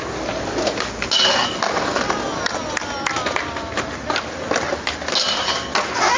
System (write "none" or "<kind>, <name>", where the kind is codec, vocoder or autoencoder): none